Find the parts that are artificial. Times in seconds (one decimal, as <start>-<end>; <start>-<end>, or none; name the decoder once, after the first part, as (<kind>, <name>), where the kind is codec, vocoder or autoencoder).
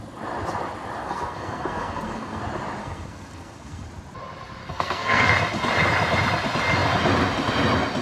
1.0-2.4 (codec, SNAC); 2.8-3.9; 4.6-5.3